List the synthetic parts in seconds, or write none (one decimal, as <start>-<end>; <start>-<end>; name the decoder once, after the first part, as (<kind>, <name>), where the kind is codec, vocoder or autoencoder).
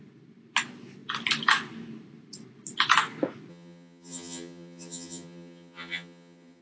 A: 3.5-6.6 (vocoder, HiFi-GAN)